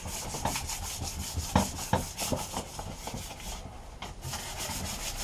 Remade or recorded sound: recorded